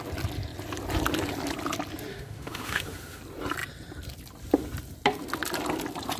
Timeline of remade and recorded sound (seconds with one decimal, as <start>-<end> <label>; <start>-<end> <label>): 0.0-2.1 recorded; 2.1-3.2 remade; 3.2-6.2 recorded